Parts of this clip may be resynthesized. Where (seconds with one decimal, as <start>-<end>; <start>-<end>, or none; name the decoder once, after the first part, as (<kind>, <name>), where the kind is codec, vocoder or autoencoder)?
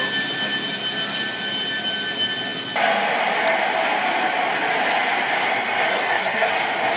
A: 5.9-6.5 (codec, SNAC)